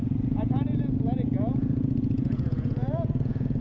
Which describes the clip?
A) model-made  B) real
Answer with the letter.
A